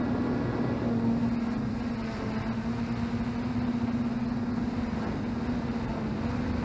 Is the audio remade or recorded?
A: recorded